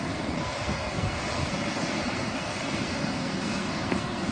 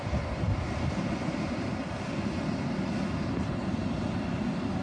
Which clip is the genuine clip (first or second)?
second